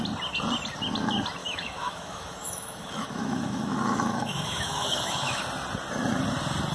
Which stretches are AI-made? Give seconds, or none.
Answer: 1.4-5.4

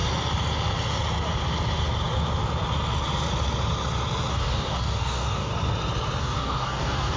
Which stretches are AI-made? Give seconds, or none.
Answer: 4.3-5.5; 6.2-7.2

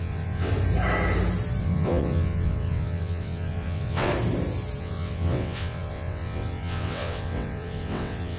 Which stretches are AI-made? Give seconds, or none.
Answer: 0.0-0.5; 1.6-4.1; 4.8-8.4

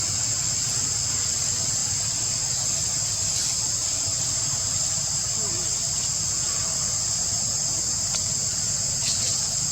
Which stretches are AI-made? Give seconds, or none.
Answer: none

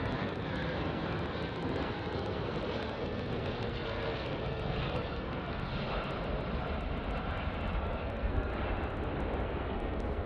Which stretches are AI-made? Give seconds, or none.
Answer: 0.0-5.7; 7.7-8.5; 9.4-10.3